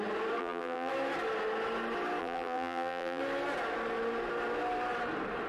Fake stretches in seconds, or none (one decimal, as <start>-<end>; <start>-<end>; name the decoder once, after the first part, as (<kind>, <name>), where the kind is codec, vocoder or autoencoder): 0.4-0.9 (vocoder, BigVGAN v2); 2.2-3.2